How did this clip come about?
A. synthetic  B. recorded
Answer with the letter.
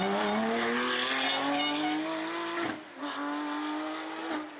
B